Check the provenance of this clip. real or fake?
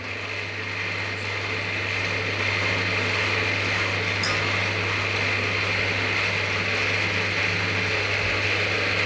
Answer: real